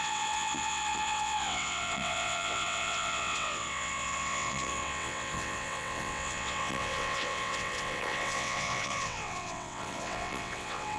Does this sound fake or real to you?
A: fake